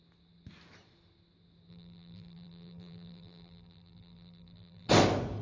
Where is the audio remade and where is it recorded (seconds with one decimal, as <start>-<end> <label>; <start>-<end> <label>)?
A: 0.0-1.7 recorded; 1.7-4.9 remade; 4.9-5.4 recorded